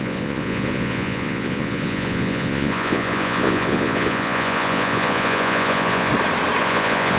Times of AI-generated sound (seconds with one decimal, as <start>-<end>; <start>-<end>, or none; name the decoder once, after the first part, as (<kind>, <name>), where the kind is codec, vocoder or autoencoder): 0.0-6.1 (vocoder, Vocos); 6.6-7.2